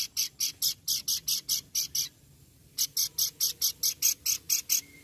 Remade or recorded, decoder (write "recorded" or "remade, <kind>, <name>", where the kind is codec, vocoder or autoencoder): recorded